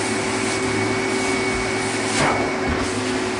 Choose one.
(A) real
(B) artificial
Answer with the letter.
A